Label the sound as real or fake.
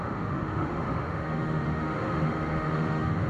fake